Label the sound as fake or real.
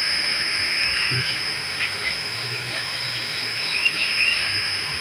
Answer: fake